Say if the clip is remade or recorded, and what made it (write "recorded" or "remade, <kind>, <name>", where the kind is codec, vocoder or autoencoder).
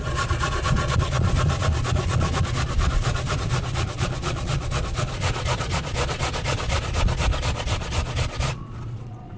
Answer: remade, vocoder, Vocos